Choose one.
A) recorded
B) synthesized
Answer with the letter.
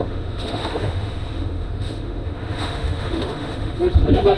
B